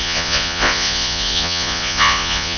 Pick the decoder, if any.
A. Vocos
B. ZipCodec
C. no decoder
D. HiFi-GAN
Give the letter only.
A